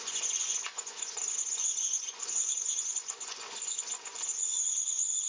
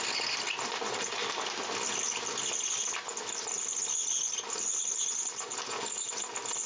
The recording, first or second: second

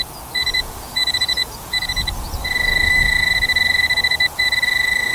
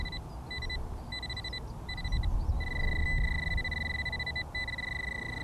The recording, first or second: second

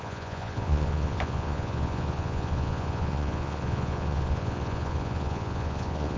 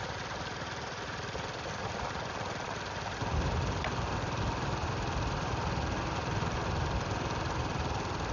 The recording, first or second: second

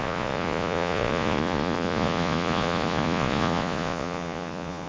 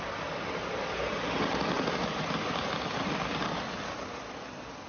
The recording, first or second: second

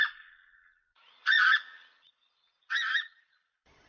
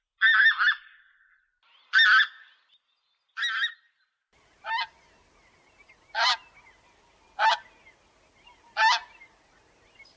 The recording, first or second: second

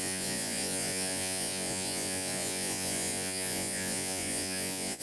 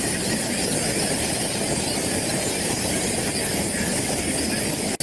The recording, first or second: second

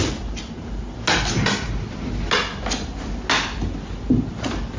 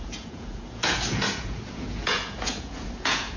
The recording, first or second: first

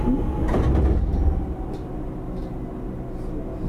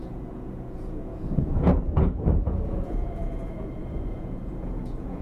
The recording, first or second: first